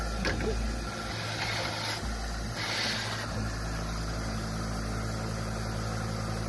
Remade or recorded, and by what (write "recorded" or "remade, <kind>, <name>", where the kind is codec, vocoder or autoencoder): recorded